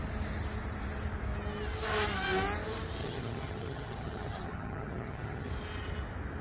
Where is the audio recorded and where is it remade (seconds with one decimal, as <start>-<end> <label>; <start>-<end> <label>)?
0.0-3.0 recorded; 3.0-5.5 remade; 5.5-6.4 recorded